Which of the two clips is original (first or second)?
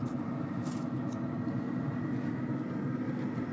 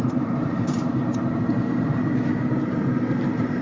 first